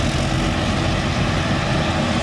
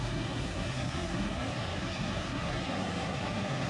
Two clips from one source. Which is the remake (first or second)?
second